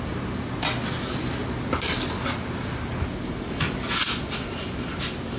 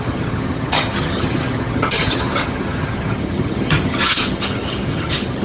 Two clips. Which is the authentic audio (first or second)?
first